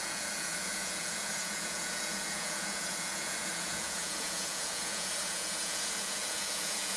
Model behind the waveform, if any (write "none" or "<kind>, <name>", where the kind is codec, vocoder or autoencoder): vocoder, Vocos